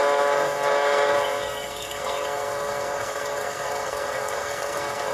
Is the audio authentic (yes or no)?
no